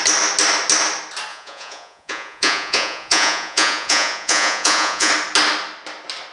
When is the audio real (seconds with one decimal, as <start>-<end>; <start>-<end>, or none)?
0.0-1.3; 5.1-6.3